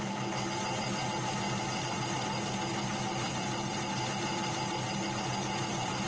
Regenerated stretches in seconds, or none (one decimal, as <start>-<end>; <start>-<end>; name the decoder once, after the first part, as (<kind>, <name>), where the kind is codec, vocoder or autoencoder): none